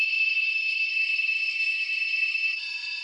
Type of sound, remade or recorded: remade